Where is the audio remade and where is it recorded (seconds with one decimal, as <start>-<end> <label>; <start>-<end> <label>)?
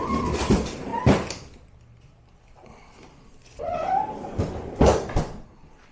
0.0-0.9 remade; 0.9-3.3 recorded; 3.3-4.9 remade; 4.9-5.9 recorded